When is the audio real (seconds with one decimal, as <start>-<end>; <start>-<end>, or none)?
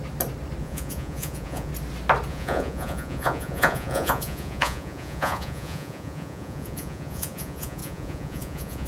0.0-0.6; 1.7-2.3